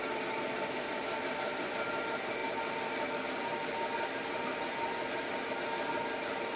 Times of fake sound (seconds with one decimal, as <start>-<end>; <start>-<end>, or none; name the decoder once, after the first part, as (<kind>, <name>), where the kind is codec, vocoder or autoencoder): none